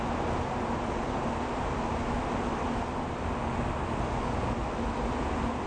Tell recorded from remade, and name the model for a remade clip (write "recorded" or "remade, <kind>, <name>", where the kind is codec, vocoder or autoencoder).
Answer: recorded